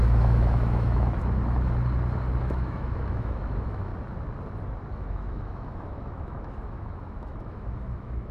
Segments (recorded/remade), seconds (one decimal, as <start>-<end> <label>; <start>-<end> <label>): 0.0-1.2 remade; 1.2-2.4 recorded; 2.4-3.9 remade; 3.9-4.9 recorded; 4.9-8.3 remade